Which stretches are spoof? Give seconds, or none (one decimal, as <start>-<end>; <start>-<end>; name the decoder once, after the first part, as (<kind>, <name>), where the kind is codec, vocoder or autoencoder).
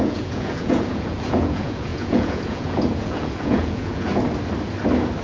0.0-4.1 (vocoder, Vocos)